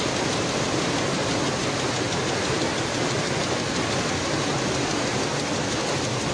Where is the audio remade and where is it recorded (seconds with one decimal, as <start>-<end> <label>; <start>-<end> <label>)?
0.0-6.3 recorded